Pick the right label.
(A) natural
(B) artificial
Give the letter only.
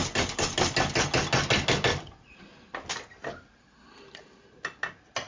A